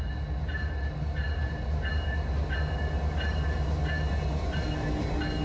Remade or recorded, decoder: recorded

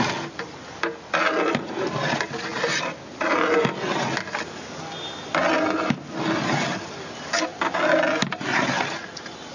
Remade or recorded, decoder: recorded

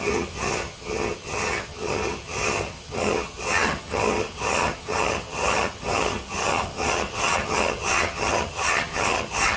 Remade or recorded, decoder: remade, vocoder, HiFi-GAN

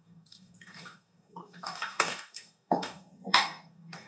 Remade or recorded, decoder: remade, codec, DAC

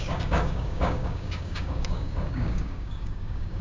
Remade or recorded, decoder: remade, codec, DAC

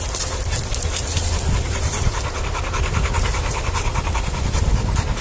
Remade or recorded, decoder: recorded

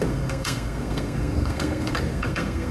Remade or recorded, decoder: remade, codec, SNAC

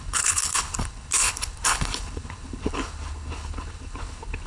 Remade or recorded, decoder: remade, codec, HILCodec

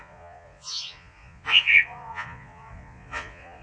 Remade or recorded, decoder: remade, vocoder, Vocos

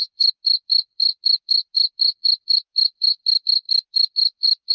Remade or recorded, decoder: recorded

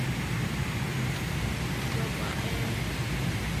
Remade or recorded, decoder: recorded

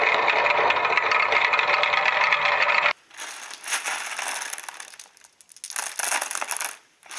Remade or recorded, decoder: recorded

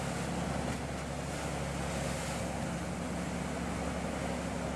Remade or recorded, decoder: recorded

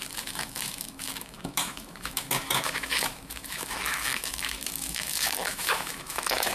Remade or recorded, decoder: remade, autoencoder, DAC-VAE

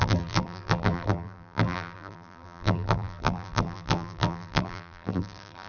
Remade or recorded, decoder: remade, vocoder, BigVGAN v2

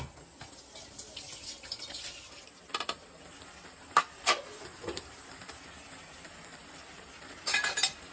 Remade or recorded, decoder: recorded